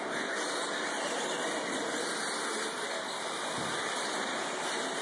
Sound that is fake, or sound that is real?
real